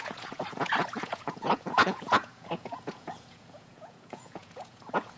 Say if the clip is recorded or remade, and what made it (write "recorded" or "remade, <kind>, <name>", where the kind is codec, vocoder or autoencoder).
remade, vocoder, Vocos